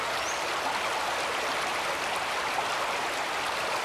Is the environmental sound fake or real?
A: real